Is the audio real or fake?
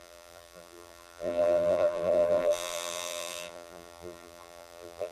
fake